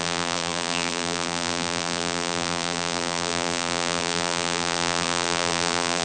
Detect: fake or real fake